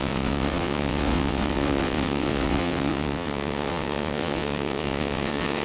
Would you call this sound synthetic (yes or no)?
yes